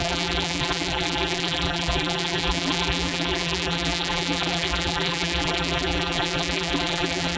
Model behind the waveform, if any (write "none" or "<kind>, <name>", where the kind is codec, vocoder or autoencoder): vocoder, BigVGAN v2